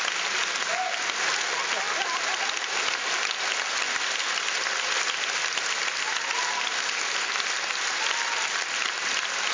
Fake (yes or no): no